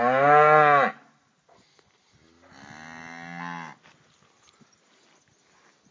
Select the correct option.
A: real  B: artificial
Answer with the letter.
A